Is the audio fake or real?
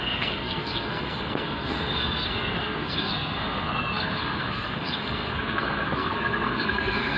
fake